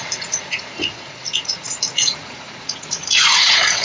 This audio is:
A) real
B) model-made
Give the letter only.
B